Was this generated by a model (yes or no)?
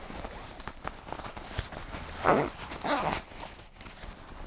no